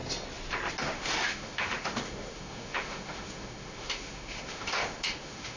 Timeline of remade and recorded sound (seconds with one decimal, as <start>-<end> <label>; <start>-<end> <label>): 0.0-0.8 recorded; 0.8-5.6 remade